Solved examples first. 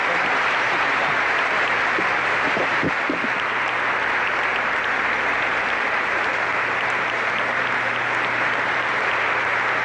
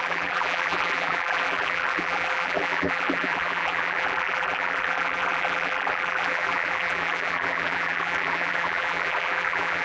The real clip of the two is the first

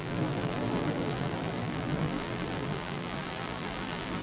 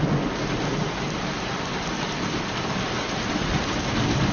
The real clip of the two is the second